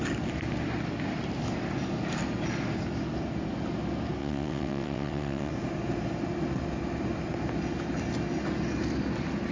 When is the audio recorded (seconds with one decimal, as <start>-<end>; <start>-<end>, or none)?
0.0-4.2; 5.5-9.5